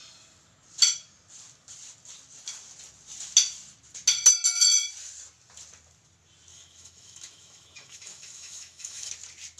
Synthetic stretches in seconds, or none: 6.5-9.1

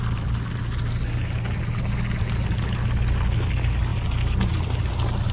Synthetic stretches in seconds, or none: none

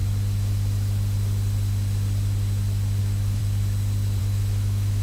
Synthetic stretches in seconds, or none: 3.0-3.4; 4.2-5.0